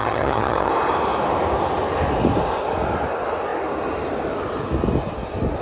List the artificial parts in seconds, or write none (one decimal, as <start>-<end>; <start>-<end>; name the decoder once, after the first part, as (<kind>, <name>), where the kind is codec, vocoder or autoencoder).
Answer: 0.0-0.7 (vocoder, HiFi-GAN)